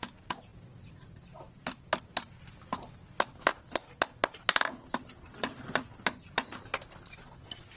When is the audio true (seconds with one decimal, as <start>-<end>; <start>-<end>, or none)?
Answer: 0.0-7.8